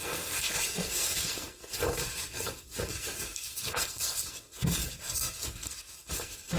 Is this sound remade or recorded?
remade